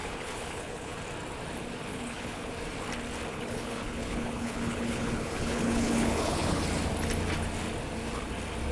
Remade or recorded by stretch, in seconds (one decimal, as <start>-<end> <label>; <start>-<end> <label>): 0.0-1.0 remade; 1.0-1.9 recorded; 1.9-2.5 remade; 2.5-3.3 recorded; 3.3-6.6 remade; 6.6-8.7 recorded